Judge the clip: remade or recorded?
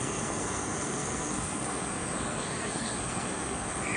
remade